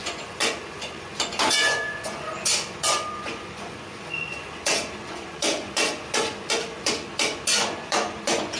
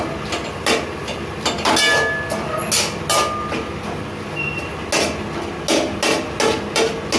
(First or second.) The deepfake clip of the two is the first